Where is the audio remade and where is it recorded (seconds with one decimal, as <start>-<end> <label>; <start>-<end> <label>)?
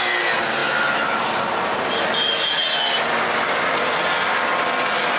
0.0-5.2 recorded